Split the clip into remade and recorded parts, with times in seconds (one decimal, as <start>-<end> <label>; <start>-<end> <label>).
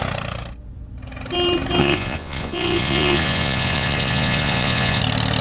0.0-1.8 recorded; 1.8-5.0 remade; 5.0-5.4 recorded